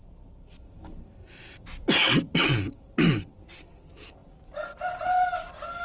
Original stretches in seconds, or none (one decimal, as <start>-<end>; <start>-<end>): 0.0-5.8